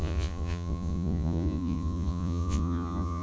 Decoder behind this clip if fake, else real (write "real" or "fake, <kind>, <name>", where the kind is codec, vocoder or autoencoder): fake, vocoder, Vocos